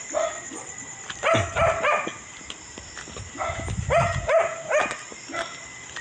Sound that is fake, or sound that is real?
real